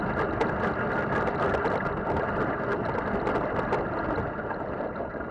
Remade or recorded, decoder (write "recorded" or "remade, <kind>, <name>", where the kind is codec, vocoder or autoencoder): recorded